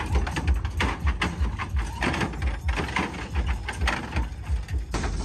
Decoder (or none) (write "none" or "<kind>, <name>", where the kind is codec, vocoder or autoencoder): none